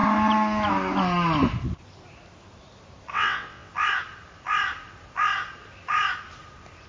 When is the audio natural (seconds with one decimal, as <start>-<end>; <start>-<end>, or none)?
0.0-3.1; 3.7-6.9